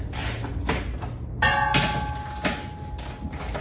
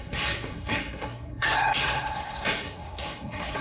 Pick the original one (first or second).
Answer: first